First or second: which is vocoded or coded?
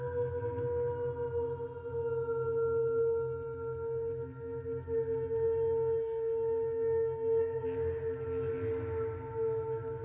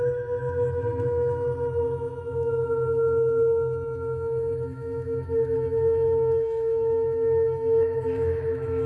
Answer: second